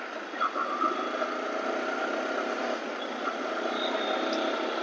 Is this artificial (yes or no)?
no